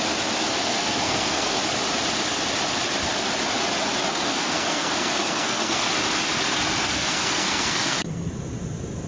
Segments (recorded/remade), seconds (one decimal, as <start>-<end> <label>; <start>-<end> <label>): 0.0-0.5 recorded; 0.5-1.6 remade; 1.6-4.1 recorded; 4.1-5.9 remade; 5.9-6.8 recorded; 6.8-8.3 remade; 8.3-9.1 recorded